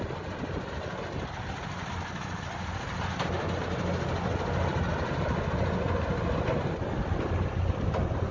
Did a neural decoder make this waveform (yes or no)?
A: no